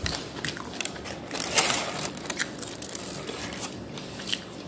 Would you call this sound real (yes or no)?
no